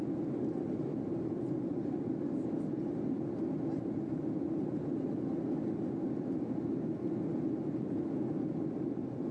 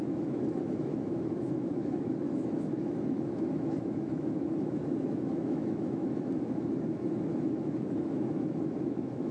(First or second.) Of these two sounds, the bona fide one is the first